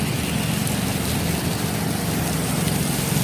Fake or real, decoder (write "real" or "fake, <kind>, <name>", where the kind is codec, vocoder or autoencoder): real